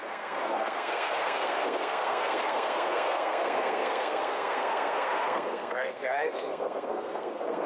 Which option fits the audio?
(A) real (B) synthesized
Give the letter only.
B